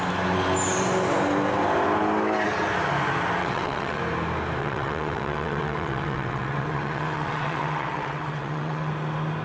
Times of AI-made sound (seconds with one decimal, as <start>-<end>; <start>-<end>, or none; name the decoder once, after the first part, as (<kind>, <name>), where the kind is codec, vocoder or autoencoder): 3.4-4.0 (vocoder, WaveNeXt); 4.6-8.9